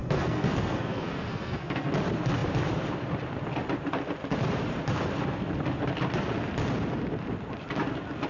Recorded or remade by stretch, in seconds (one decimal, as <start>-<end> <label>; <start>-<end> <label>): 0.0-1.9 remade; 1.9-8.3 recorded